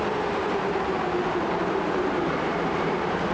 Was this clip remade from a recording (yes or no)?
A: yes